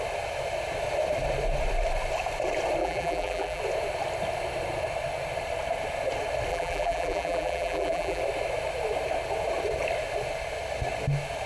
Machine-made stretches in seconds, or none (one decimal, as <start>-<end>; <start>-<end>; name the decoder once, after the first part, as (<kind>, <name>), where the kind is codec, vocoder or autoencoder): 2.8-3.6 (vocoder, BigVGAN v2); 6.5-8.2